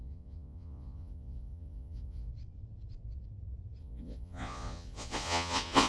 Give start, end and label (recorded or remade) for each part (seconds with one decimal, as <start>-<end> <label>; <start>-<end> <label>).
0.0-2.3 remade; 2.3-3.8 recorded; 3.8-5.9 remade